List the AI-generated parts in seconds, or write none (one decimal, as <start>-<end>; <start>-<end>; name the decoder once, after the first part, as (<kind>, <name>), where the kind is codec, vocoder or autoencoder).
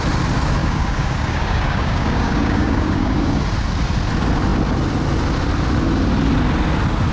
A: 0.6-3.4 (codec, DAC)